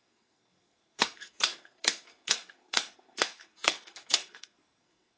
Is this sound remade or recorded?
remade